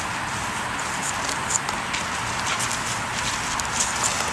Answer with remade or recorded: recorded